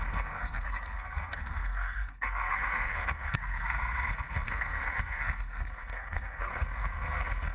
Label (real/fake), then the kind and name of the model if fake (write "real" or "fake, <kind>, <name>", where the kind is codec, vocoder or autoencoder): fake, codec, SNAC